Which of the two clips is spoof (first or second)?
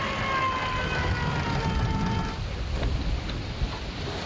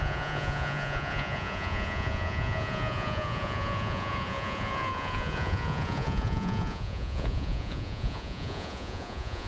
second